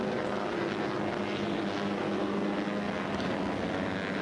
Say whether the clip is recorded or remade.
recorded